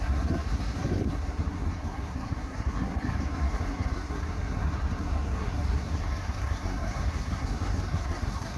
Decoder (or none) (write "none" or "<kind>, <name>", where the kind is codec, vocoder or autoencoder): codec, SNAC